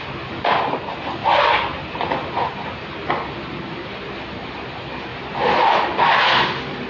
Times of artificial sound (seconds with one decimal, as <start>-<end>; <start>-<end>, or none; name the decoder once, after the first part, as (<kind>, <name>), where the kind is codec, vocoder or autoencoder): none